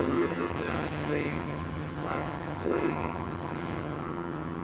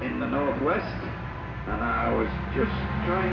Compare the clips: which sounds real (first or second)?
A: second